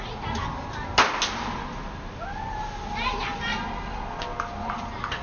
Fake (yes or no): no